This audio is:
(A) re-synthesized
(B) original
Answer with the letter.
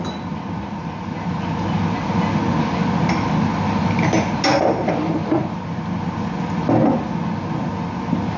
B